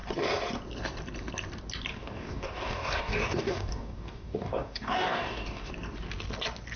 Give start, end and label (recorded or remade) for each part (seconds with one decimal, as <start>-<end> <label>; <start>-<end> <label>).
0.0-1.9 recorded; 1.9-5.7 remade; 5.7-6.8 recorded

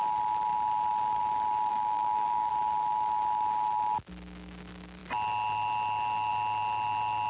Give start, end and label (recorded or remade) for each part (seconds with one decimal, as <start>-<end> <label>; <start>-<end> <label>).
0.0-1.7 recorded; 1.7-2.5 remade; 2.5-7.3 recorded

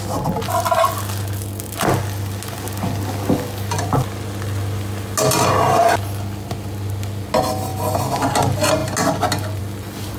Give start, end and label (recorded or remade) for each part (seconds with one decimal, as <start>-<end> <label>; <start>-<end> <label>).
0.0-10.2 recorded